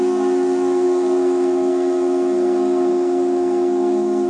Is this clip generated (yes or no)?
yes